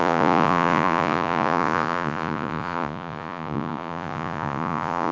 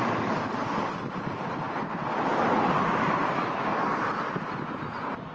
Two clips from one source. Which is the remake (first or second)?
first